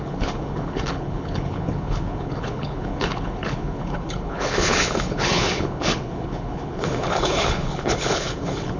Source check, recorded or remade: remade